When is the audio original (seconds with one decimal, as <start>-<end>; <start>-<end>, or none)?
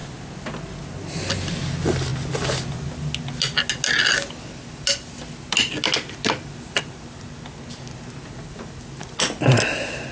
0.0-10.1